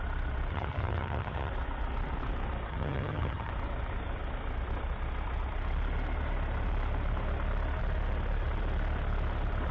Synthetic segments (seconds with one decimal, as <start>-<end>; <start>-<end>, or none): 0.5-1.5; 2.7-3.5